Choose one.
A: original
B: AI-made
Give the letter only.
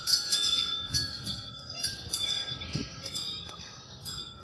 B